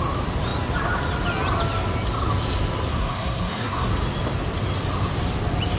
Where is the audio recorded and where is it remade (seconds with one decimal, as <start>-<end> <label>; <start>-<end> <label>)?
0.0-2.9 recorded; 2.9-3.9 remade; 3.9-5.8 recorded